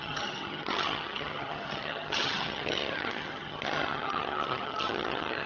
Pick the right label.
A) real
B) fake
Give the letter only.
B